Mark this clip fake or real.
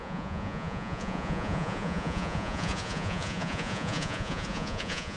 fake